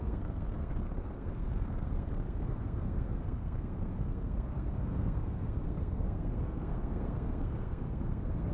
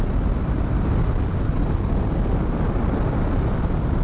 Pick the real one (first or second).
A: second